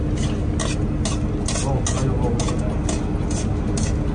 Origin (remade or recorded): recorded